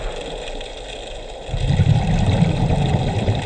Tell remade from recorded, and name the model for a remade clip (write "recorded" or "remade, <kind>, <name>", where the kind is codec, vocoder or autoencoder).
recorded